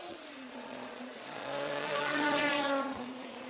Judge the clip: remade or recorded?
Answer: remade